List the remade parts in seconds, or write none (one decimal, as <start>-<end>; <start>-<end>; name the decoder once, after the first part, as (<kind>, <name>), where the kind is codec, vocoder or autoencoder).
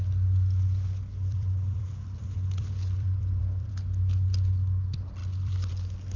1.1-3.7 (vocoder, BigVGAN v2); 5.2-5.7